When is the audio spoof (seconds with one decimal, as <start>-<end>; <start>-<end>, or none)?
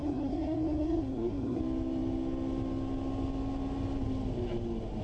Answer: 0.0-1.6